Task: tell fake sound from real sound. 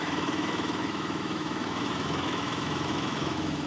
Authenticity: fake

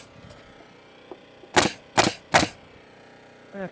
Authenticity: real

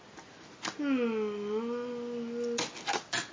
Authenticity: real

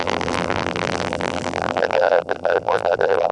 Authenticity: fake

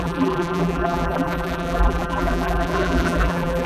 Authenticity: fake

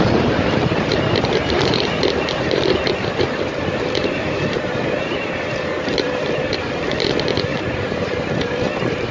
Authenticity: fake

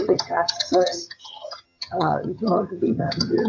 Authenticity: fake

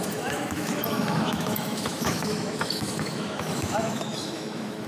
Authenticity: fake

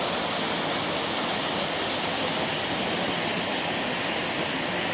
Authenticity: real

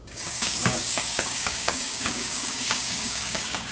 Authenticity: fake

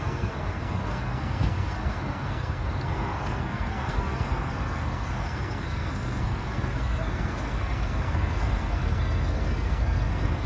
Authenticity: fake